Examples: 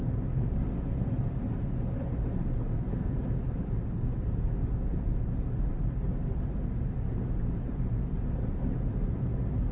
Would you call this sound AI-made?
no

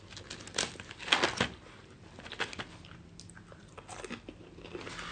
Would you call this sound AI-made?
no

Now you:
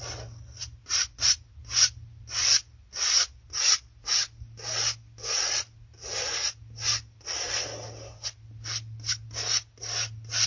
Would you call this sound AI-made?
no